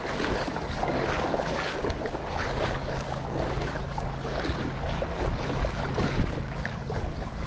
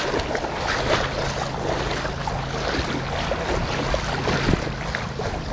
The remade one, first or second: first